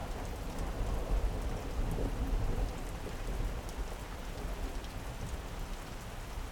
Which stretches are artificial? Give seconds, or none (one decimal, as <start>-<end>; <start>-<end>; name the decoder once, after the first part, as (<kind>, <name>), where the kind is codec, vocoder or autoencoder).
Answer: none